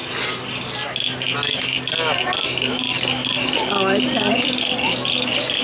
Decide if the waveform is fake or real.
real